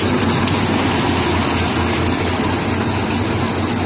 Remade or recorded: recorded